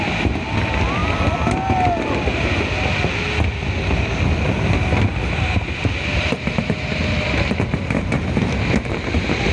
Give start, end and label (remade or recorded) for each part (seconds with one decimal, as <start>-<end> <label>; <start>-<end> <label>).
0.0-6.1 recorded; 6.1-8.2 remade; 8.2-9.5 recorded